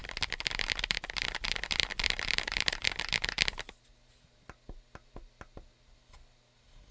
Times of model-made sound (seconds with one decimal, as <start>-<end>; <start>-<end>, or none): 0.0-3.0